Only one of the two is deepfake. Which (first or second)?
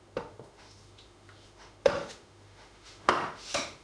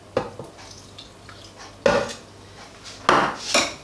first